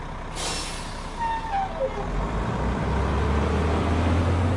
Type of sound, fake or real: real